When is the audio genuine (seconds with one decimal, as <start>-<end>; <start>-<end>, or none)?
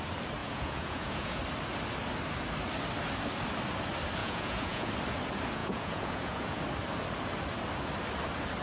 0.0-0.4; 1.4-4.2; 4.9-5.6; 6.6-8.6